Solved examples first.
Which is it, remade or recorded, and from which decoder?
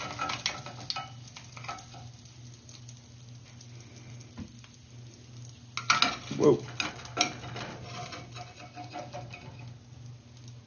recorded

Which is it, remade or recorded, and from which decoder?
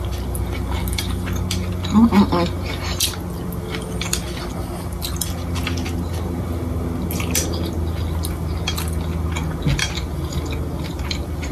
recorded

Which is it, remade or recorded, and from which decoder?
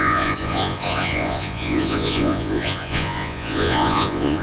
remade, vocoder, Vocos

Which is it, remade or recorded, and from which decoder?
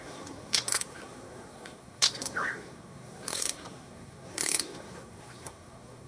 remade, codec, SNAC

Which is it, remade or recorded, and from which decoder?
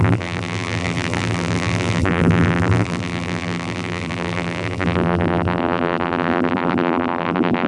remade, vocoder, BigVGAN v2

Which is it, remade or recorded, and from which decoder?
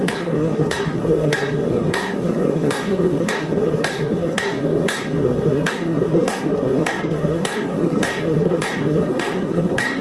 remade, codec, SNAC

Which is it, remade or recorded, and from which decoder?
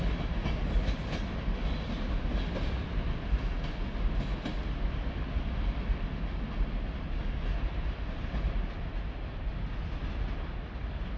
recorded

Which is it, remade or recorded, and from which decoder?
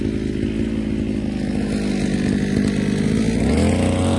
recorded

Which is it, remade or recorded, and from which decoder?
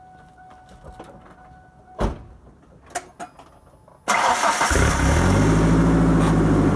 recorded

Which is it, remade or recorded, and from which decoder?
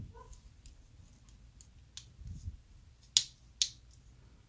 recorded